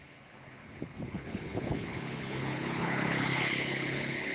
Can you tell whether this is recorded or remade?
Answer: remade